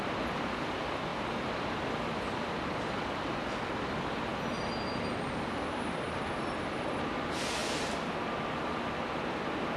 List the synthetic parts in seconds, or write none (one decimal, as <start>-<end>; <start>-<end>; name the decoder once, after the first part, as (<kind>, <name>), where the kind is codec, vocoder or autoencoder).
none